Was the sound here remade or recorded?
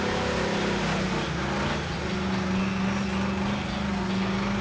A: recorded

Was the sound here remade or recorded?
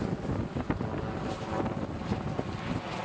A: recorded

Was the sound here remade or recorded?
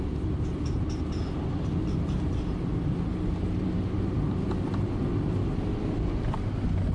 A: recorded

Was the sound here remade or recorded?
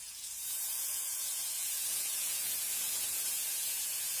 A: remade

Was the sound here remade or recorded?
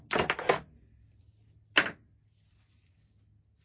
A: recorded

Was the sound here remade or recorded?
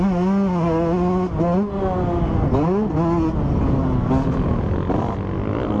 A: recorded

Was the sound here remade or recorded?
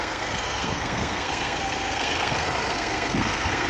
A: remade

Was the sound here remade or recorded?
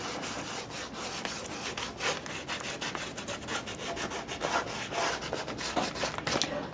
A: recorded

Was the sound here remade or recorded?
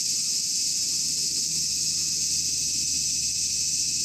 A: recorded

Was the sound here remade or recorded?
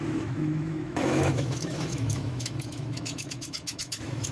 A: remade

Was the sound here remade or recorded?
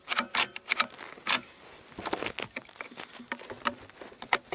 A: recorded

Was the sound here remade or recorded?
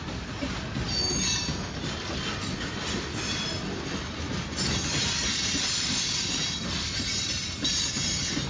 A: recorded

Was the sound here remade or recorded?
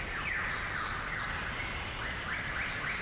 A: recorded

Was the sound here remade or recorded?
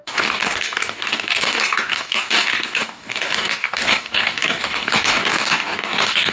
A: remade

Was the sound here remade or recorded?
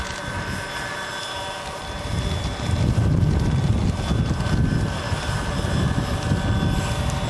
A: recorded